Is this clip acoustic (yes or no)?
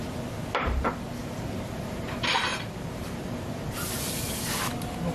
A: no